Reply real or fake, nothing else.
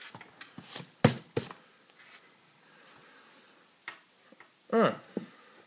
real